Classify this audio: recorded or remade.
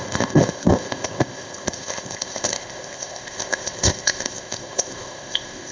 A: remade